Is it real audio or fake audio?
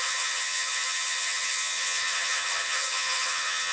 fake